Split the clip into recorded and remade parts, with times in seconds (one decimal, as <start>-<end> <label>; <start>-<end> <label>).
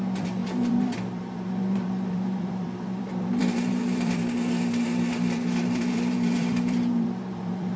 0.0-7.8 remade